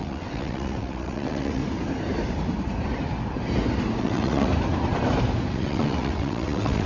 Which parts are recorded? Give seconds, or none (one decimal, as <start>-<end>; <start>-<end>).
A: 1.6-4.0; 4.5-5.5